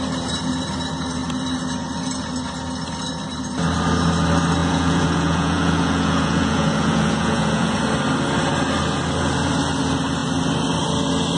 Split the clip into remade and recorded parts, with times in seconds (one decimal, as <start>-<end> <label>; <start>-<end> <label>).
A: 0.0-4.6 recorded; 4.6-7.8 remade; 7.8-11.4 recorded